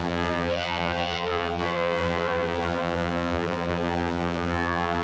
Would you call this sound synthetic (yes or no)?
yes